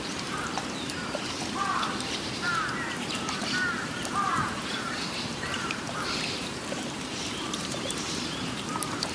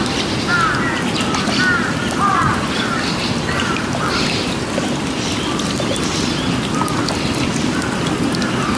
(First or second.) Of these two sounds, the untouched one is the second